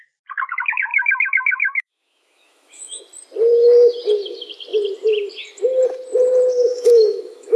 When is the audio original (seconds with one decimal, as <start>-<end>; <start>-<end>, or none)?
0.0-0.9; 3.0-6.7